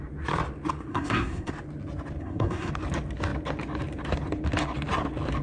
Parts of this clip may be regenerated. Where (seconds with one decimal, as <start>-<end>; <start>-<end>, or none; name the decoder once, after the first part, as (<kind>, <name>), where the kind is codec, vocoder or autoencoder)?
0.9-1.5 (codec, SNAC); 2.2-2.7